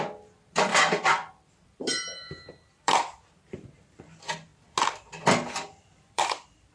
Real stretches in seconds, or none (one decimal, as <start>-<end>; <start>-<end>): 4.5-5.5